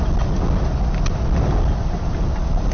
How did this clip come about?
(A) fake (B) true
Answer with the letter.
B